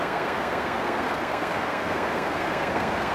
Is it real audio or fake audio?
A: fake